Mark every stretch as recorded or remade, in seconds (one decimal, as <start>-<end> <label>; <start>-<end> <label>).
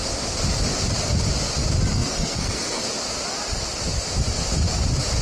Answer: 0.0-1.9 recorded; 1.9-2.8 remade; 2.8-5.2 recorded